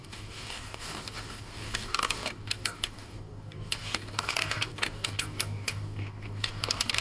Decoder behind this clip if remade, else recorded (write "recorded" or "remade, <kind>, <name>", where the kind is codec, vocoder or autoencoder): remade, codec, DAC